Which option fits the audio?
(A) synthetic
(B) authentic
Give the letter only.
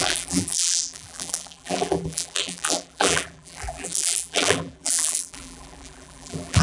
A